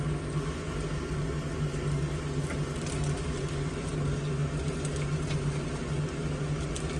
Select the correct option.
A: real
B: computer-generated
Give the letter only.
A